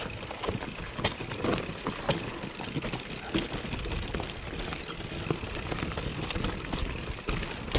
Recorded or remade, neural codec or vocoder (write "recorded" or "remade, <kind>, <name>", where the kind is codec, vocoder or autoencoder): recorded